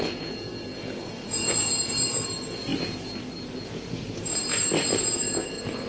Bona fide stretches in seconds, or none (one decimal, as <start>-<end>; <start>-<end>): 0.5-1.0; 2.7-3.6